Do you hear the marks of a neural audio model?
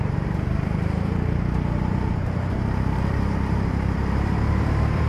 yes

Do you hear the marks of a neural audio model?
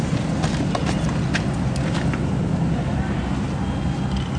no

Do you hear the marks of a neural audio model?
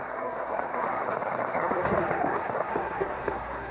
yes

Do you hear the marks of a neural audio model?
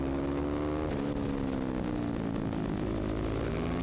no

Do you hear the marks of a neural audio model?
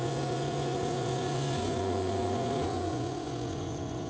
yes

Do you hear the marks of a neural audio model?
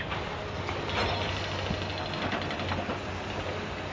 no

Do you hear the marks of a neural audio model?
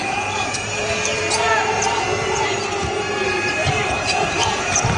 yes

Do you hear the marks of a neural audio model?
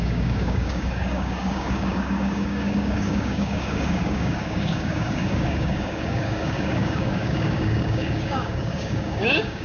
yes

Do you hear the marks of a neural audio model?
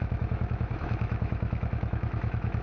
yes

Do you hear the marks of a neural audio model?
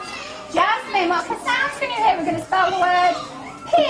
no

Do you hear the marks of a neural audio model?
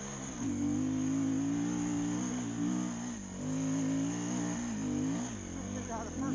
no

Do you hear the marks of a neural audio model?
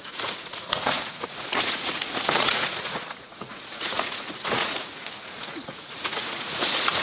yes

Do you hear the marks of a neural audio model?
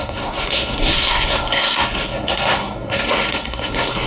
yes